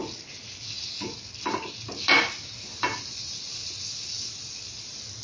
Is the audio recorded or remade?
recorded